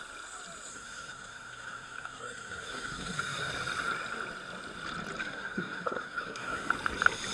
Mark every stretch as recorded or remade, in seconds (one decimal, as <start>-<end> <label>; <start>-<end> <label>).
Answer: 0.0-0.7 recorded; 0.7-3.5 remade; 3.5-5.2 recorded; 5.2-6.7 remade; 6.7-7.3 recorded